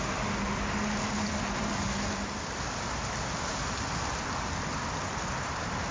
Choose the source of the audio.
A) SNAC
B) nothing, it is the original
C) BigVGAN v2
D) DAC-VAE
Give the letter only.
B